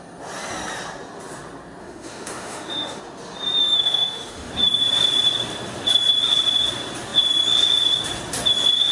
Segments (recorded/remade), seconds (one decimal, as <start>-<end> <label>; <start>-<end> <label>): 0.0-1.8 recorded; 1.8-3.0 remade; 3.0-3.6 recorded; 3.6-4.5 remade; 4.5-8.9 recorded